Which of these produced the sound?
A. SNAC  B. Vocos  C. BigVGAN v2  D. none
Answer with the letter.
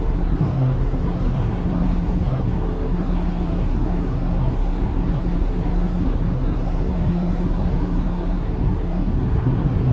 A